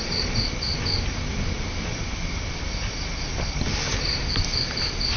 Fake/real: real